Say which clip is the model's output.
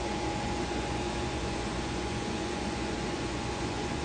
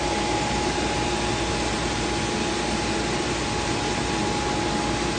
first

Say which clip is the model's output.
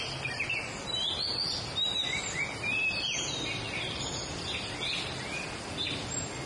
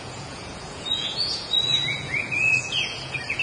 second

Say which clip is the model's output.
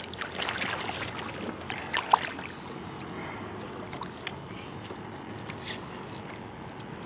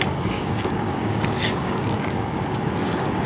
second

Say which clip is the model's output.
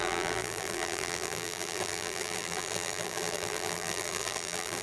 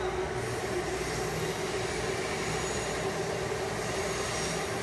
first